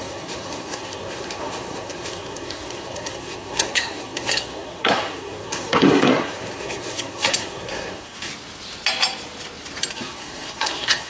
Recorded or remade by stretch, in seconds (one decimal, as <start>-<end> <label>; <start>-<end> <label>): 0.0-8.3 remade; 8.3-9.9 recorded; 9.9-11.1 remade